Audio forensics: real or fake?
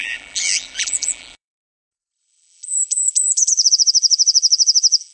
fake